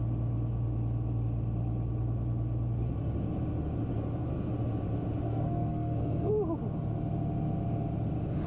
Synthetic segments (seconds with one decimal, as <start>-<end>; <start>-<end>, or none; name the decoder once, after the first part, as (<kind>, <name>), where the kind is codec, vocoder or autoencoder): 3.9-4.5 (codec, SNAC); 5.3-6.3